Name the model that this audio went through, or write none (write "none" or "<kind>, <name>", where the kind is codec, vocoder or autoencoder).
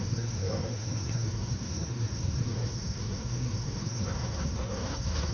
codec, SNAC